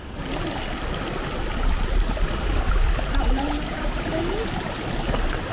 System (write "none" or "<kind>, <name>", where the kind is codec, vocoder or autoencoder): none